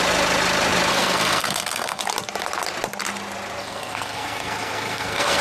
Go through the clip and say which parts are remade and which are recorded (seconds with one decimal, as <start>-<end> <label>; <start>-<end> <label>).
0.0-0.9 recorded; 0.9-2.0 remade; 2.0-3.6 recorded; 3.6-5.4 remade